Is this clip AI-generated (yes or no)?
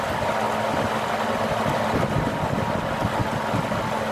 no